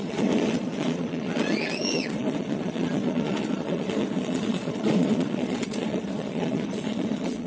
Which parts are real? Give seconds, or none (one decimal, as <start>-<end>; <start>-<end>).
none